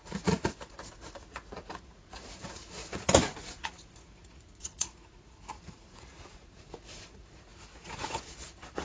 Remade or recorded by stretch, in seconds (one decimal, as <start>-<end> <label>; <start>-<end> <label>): 0.0-8.8 remade